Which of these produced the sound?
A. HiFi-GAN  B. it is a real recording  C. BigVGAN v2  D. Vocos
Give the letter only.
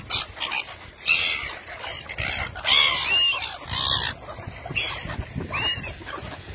B